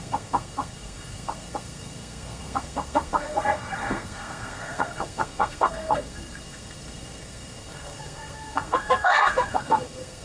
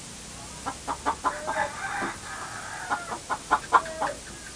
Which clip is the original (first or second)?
second